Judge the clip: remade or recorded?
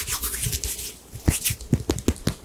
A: recorded